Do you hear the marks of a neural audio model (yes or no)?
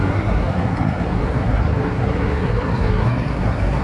yes